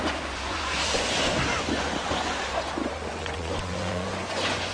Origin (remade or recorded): remade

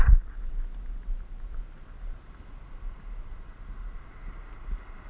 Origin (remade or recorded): recorded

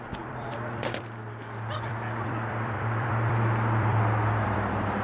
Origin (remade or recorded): remade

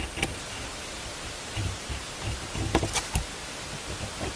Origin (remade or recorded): recorded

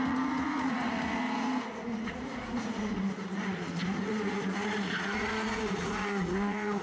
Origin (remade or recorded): remade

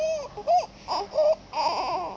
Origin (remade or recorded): recorded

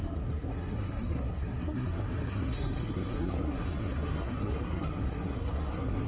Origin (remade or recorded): remade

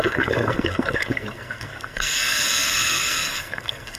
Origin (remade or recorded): remade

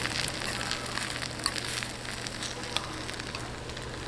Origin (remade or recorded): recorded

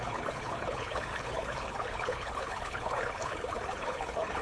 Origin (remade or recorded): remade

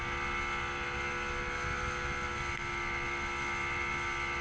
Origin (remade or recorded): recorded